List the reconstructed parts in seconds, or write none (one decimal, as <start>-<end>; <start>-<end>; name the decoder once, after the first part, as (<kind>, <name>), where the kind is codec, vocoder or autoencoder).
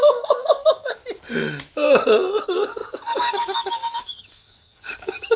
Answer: 0.0-1.0 (codec, DAC); 2.4-5.4